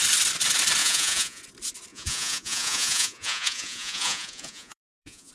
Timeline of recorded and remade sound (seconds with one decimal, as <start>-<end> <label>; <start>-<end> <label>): 0.0-0.8 recorded; 0.8-1.4 remade; 1.4-1.9 recorded; 1.9-5.3 remade